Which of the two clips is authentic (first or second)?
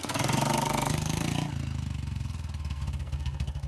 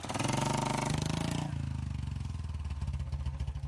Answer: second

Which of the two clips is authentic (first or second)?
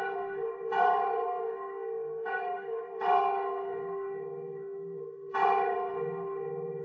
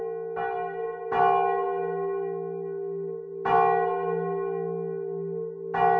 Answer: second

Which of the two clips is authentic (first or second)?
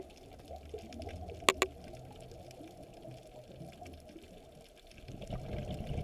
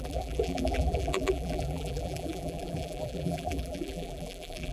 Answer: first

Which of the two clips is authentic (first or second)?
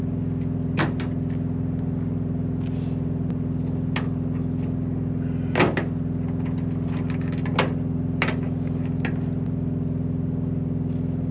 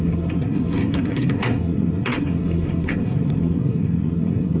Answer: first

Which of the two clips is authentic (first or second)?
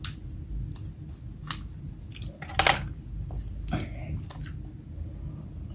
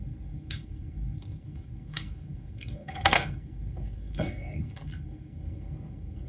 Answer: first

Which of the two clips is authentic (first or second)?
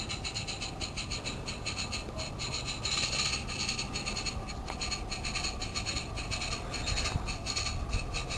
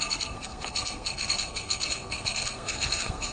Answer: first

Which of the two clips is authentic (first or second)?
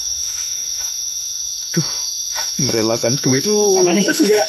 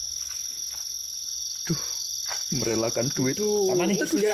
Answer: second